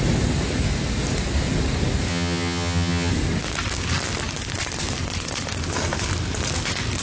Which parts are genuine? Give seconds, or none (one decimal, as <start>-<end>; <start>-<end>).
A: 0.0-2.1; 3.1-7.0